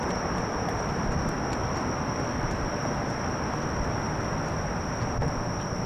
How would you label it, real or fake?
real